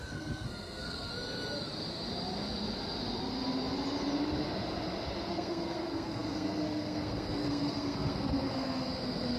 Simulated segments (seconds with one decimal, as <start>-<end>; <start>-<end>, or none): 0.0-1.1; 5.3-9.4